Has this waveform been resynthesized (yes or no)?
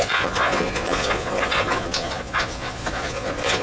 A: yes